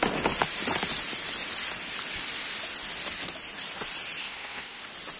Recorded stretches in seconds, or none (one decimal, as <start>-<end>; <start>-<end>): 0.0-4.2; 4.8-5.2